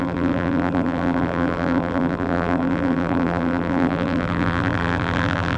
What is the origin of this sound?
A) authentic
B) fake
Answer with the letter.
B